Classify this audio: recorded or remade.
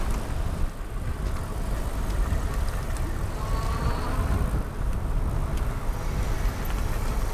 recorded